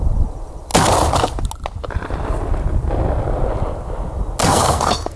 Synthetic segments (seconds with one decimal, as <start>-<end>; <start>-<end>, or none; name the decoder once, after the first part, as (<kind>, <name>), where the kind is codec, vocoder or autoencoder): 4.4-5.2 (codec, SNAC)